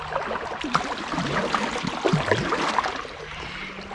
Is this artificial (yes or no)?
no